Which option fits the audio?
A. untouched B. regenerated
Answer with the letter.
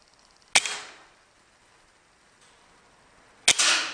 A